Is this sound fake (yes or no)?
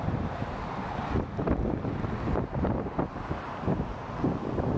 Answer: no